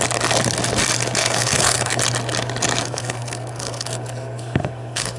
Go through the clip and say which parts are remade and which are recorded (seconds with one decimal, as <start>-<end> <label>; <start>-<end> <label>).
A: 0.0-1.2 recorded; 1.2-2.0 remade; 2.0-2.8 recorded; 2.8-5.2 remade